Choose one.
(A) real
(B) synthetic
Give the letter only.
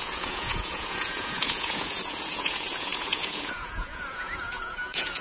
B